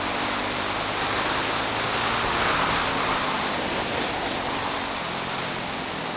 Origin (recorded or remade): recorded